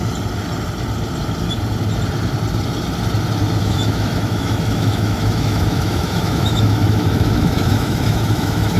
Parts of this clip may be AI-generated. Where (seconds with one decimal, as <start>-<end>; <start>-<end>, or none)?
3.6-8.8